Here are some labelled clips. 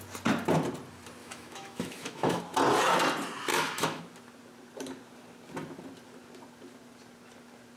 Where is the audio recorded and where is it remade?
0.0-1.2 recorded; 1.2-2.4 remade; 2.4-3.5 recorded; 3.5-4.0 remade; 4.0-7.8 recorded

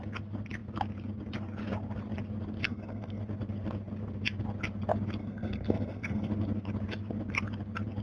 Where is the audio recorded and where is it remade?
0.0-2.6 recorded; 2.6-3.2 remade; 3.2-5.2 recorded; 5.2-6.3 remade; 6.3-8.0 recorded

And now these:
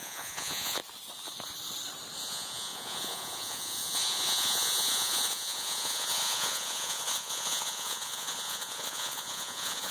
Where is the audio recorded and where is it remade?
0.0-0.8 remade; 0.8-2.2 recorded; 2.2-9.9 remade